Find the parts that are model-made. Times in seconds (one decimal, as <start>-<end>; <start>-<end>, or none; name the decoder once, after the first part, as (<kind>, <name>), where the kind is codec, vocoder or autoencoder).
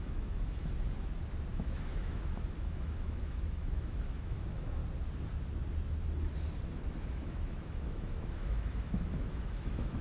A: 0.0-0.6 (autoencoder, DAC-VAE); 1.5-4.8; 7.0-10.0